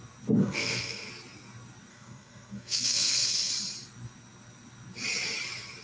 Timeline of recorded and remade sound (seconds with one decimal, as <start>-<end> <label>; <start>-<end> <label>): 0.0-0.4 recorded; 0.4-1.1 remade; 1.1-1.9 recorded; 1.9-3.5 remade; 3.5-5.8 recorded